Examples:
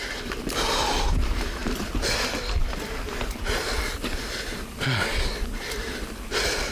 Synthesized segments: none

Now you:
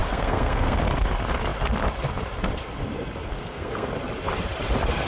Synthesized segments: 0.0-0.8 (codec, SNAC); 3.3-3.9

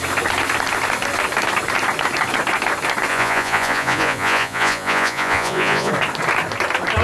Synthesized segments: 3.1-5.9 (vocoder, Vocos)

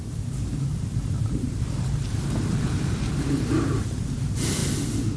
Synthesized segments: 0.0-4.6 (vocoder, BigVGAN v2)

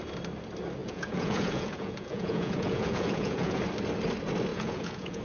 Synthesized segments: 0.8-3.6 (vocoder, Vocos); 4.5-5.2